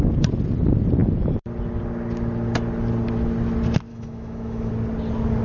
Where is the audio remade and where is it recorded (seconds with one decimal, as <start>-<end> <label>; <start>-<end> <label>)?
0.0-3.9 recorded; 3.9-4.7 remade; 4.7-5.4 recorded